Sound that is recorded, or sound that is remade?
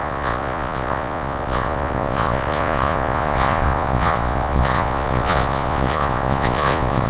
remade